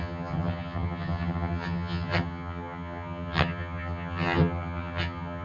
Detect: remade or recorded remade